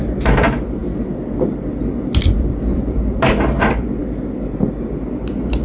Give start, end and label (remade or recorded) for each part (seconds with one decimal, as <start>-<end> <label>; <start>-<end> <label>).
0.0-2.7 recorded; 2.7-3.6 remade; 3.6-5.6 recorded